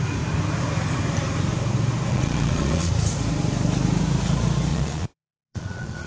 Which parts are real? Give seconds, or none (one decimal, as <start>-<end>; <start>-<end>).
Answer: 0.0-2.1; 2.9-4.7